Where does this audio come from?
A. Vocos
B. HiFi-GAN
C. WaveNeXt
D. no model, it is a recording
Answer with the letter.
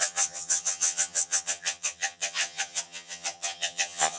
B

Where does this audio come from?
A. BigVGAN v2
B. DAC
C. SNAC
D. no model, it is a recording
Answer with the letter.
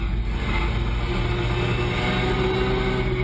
D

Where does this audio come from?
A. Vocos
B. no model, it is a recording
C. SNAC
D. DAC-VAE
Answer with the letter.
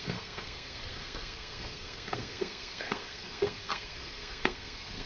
C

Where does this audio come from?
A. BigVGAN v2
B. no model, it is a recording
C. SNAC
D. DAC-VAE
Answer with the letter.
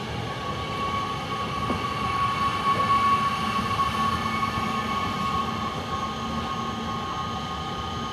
B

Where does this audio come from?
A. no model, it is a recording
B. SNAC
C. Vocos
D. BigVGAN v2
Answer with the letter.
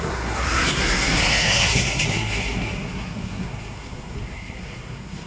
B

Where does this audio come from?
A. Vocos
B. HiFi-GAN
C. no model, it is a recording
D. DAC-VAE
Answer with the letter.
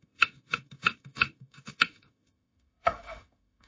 D